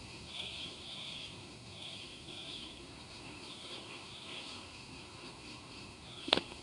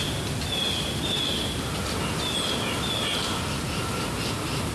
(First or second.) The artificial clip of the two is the first